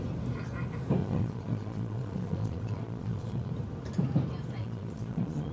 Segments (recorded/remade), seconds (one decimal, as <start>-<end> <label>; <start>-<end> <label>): 0.0-1.0 recorded; 1.0-3.5 remade; 3.5-4.6 recorded; 4.6-5.5 remade